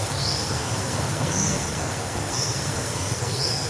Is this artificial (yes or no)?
yes